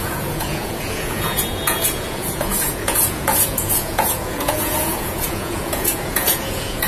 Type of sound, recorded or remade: remade